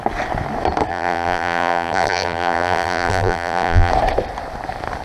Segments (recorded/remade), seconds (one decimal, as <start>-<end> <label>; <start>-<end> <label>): 0.0-0.9 recorded; 0.9-3.9 remade; 3.9-5.0 recorded